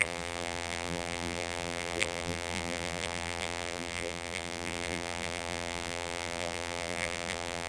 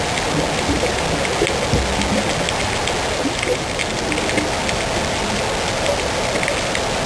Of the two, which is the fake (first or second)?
first